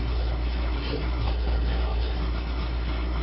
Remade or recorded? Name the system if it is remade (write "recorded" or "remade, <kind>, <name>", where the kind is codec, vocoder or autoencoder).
remade, codec, SNAC